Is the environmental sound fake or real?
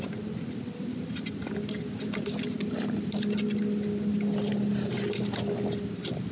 real